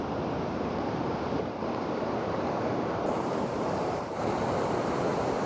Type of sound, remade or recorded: remade